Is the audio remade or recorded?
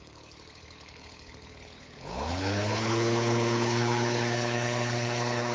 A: remade